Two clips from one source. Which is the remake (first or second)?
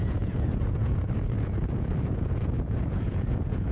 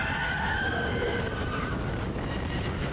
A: first